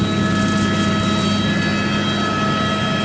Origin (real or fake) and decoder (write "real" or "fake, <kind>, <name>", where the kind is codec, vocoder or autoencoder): real